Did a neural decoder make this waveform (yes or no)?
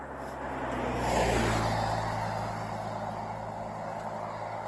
no